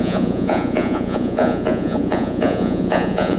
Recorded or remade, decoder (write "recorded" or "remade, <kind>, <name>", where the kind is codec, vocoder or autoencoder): remade, vocoder, Vocos